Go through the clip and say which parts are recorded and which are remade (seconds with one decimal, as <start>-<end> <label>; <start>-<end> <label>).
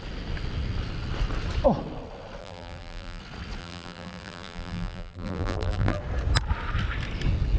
0.0-2.4 recorded; 2.4-3.2 remade; 3.2-3.6 recorded; 3.6-6.0 remade; 6.0-7.6 recorded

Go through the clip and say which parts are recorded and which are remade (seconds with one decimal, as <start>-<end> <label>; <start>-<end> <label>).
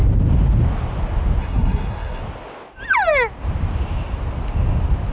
0.0-1.4 recorded; 1.4-2.2 remade; 2.2-5.1 recorded